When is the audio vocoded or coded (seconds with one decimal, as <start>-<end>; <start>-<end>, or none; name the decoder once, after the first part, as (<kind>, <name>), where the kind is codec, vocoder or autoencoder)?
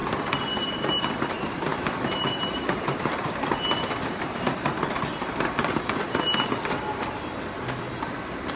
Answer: 1.7-5.5 (vocoder, BigVGAN v2)